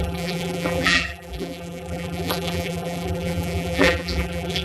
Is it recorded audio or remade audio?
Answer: remade